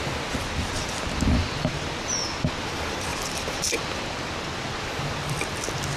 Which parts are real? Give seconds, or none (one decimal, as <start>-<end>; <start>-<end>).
0.0-1.4; 2.4-3.1; 4.0-6.0